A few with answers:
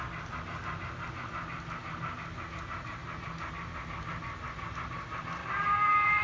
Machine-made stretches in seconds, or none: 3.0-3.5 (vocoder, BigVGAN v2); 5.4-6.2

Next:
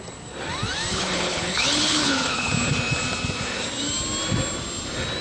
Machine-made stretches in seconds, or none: 0.9-2.5 (codec, HILCodec)